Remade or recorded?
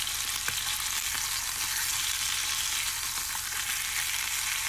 recorded